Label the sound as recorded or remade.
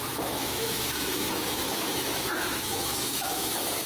remade